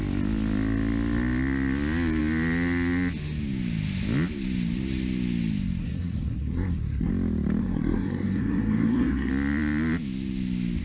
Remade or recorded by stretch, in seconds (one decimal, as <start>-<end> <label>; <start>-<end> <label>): 0.0-5.8 recorded; 5.8-7.1 remade; 7.1-7.6 recorded; 7.6-9.3 remade; 9.3-10.8 recorded